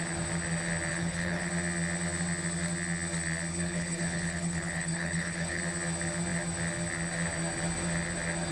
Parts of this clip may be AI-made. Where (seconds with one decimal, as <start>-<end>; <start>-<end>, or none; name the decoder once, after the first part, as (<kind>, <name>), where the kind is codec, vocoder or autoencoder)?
0.9-1.5 (codec, HILCodec); 3.5-5.6